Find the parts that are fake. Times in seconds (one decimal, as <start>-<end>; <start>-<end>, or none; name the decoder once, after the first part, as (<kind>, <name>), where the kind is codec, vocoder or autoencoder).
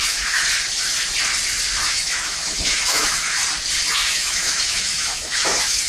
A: 0.0-0.4 (autoencoder, DAC-VAE); 1.8-3.4; 3.9-5.9